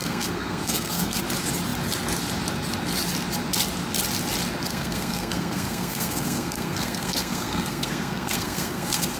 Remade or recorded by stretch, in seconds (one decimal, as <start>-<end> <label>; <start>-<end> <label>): 0.0-1.2 remade; 1.2-4.7 recorded; 4.7-9.2 remade